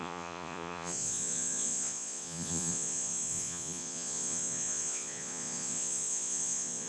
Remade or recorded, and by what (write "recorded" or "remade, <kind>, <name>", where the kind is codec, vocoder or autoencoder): remade, vocoder, Vocos